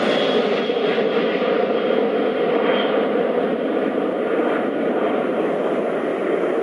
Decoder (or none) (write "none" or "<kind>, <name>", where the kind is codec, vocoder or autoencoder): none